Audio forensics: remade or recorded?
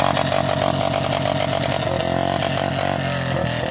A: recorded